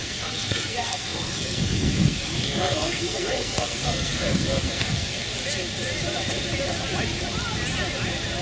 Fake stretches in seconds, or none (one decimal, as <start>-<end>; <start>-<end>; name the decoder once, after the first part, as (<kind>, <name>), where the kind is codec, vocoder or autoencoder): 0.0-5.3 (codec, SNAC)